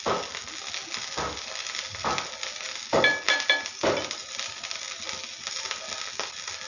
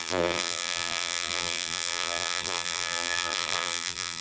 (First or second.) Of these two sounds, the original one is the first